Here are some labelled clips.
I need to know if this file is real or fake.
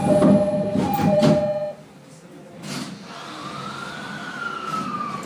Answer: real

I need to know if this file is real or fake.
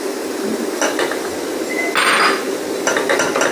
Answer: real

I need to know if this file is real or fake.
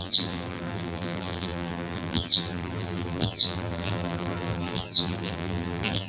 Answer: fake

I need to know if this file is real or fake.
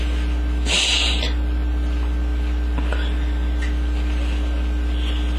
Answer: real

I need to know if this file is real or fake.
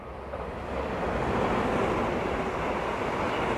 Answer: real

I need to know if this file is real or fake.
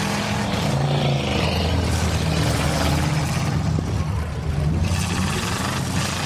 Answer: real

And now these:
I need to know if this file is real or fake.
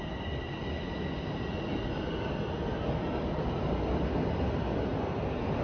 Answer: real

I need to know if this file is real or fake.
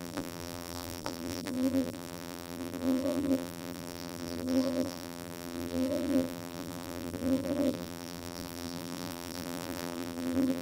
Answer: fake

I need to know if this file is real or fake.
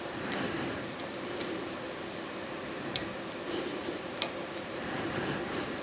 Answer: fake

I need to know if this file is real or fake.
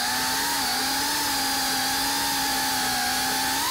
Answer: real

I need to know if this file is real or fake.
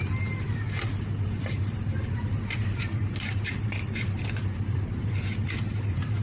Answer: fake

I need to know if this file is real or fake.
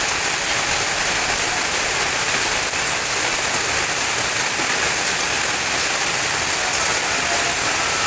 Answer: real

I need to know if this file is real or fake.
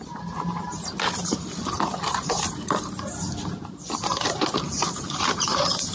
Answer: fake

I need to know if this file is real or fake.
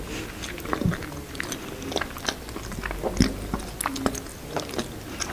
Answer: real